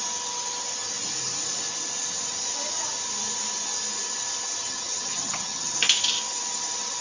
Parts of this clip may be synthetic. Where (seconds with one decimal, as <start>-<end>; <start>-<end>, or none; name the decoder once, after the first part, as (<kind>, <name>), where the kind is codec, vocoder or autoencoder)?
4.6-5.8 (vocoder, HiFi-GAN)